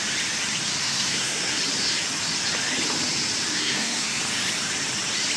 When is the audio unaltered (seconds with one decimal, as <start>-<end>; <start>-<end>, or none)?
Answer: 0.0-0.8; 1.6-3.5; 4.2-5.4